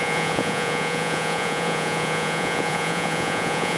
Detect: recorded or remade remade